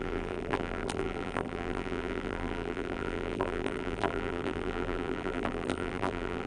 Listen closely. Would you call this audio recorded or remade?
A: remade